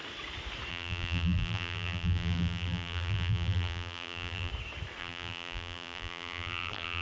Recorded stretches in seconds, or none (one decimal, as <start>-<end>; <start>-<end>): 0.0-0.7; 4.5-5.0